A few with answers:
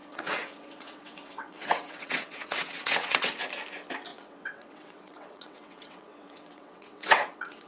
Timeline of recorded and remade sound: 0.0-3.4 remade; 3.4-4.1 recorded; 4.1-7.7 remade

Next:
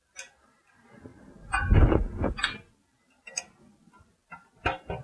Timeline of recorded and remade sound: 0.0-5.0 recorded

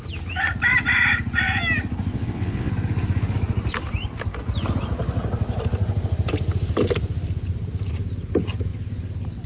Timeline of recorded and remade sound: 0.0-2.1 recorded; 2.1-2.7 remade; 2.7-9.5 recorded

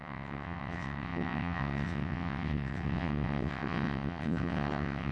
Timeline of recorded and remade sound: 0.0-5.1 remade

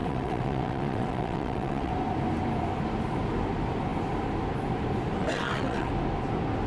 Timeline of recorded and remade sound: 0.0-1.9 remade; 1.9-5.2 recorded; 5.2-5.9 remade; 5.9-6.7 recorded

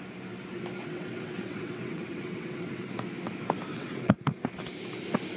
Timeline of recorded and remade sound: 0.0-0.8 recorded; 0.8-2.9 remade; 2.9-3.7 recorded; 3.7-4.2 remade; 4.2-5.4 recorded

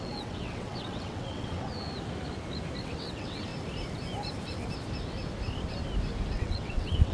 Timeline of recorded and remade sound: 0.0-1.7 remade; 1.7-2.8 recorded; 2.8-3.5 remade; 3.5-6.3 recorded; 6.3-7.1 remade

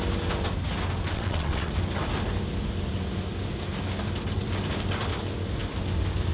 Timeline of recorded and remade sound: 0.0-1.1 recorded; 1.1-1.7 remade; 1.7-6.3 recorded